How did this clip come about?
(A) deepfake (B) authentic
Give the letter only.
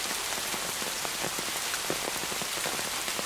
B